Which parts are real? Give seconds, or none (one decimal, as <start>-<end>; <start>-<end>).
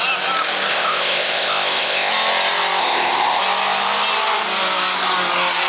0.0-0.7; 2.1-2.8; 3.4-5.7